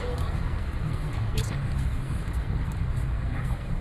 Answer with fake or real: fake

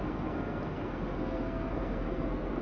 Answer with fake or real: fake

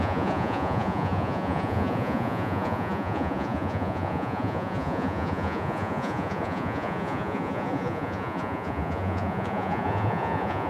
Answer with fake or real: fake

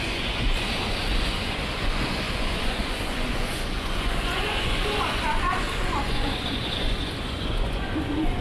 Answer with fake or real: fake